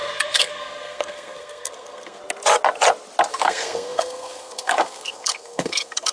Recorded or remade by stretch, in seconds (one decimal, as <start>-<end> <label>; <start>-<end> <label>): 0.0-2.2 remade; 2.2-3.3 recorded; 3.3-6.1 remade

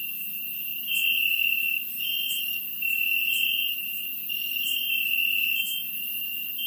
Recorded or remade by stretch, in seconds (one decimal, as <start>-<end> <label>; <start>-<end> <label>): 0.0-4.1 recorded; 4.1-5.2 remade; 5.2-6.7 recorded

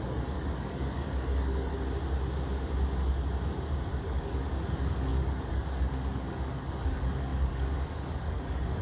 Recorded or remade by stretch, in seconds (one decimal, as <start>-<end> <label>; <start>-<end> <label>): 0.0-1.7 remade; 1.7-3.9 recorded; 3.9-8.8 remade

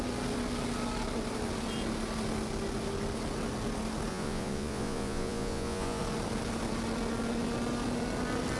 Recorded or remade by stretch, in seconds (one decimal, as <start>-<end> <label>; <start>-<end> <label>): 0.0-4.1 recorded; 4.1-6.0 remade; 6.0-8.6 recorded

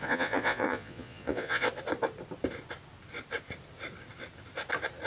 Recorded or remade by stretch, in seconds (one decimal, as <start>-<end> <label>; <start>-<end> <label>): 0.0-1.7 remade; 1.7-5.1 recorded